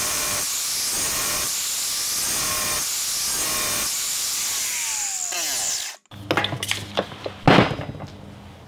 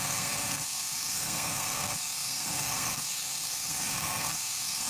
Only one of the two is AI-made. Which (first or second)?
second